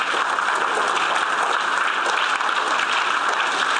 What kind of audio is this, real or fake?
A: real